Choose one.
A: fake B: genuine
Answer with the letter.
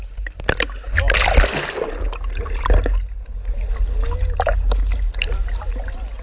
B